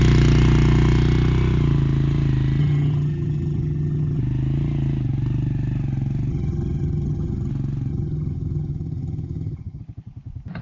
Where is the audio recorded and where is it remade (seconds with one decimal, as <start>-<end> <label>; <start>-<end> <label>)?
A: 0.0-2.6 recorded; 2.6-4.2 remade; 4.2-6.3 recorded; 6.3-7.5 remade; 7.5-7.9 recorded; 7.9-9.8 remade; 9.8-10.6 recorded